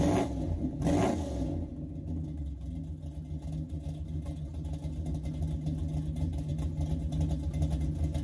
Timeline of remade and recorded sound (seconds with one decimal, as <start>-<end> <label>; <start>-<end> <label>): 0.0-8.2 recorded